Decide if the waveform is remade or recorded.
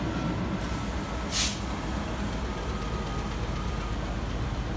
recorded